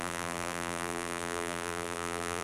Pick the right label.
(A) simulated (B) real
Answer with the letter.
A